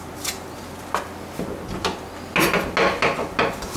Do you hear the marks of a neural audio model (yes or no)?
no